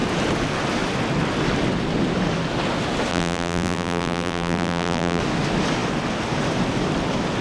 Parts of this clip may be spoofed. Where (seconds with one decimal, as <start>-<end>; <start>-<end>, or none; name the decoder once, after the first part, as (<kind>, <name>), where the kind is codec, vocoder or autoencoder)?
3.1-5.2 (vocoder, BigVGAN v2)